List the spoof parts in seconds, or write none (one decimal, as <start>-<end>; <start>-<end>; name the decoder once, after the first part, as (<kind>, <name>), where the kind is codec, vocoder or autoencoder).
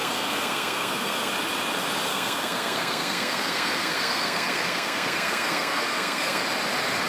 0.0-1.3 (codec, SNAC); 2.1-6.4